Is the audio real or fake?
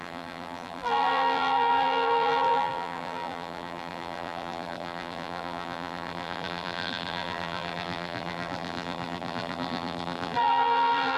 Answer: fake